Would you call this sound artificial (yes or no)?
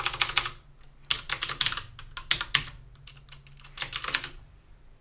no